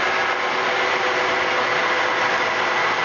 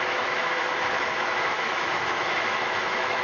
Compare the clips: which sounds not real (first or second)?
second